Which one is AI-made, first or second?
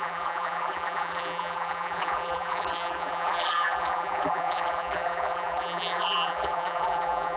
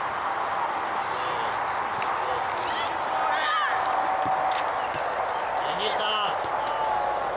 first